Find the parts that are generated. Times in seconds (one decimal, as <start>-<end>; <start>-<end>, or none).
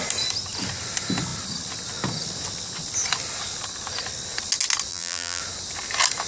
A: 4.9-5.4